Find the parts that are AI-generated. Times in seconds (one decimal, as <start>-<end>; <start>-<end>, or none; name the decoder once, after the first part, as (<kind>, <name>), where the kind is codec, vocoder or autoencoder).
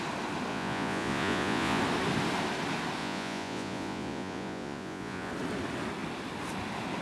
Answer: 0.5-1.8 (vocoder, Vocos); 3.0-5.3